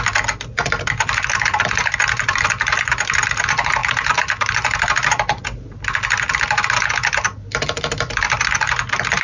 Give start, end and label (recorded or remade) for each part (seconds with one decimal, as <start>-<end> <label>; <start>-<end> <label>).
0.0-9.2 recorded